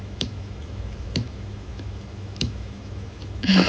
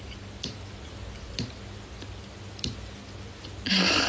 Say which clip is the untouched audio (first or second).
second